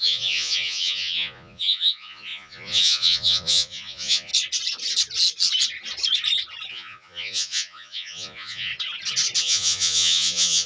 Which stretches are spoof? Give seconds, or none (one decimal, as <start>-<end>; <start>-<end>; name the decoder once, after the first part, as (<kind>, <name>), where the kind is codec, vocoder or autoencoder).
0.0-4.3 (vocoder, Vocos); 6.7-8.7; 9.4-10.7